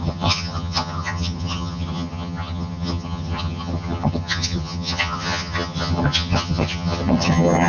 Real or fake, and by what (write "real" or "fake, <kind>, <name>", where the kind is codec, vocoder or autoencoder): fake, vocoder, HiFi-GAN